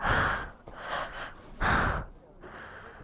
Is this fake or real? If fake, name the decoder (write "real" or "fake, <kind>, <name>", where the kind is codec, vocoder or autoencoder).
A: real